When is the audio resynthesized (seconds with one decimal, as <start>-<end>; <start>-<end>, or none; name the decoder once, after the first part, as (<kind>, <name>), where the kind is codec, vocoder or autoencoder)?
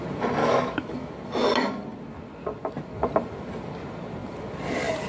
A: 0.4-1.1 (autoencoder, DAC-VAE)